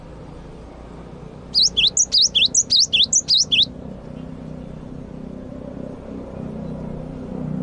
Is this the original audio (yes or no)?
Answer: yes